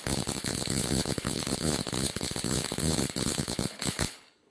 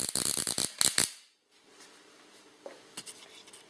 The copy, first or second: first